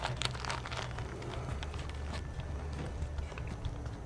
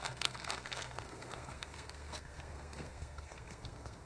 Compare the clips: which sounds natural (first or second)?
first